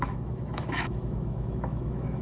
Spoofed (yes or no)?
yes